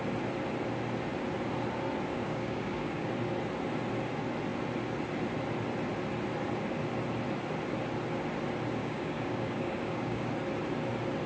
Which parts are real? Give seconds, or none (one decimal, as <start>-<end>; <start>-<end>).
0.0-2.1; 3.1-8.8; 10.3-11.3